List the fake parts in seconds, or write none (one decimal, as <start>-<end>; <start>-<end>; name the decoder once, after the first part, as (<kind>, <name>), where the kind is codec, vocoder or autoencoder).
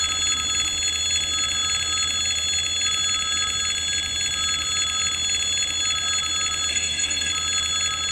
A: 6.7-7.3 (codec, SNAC)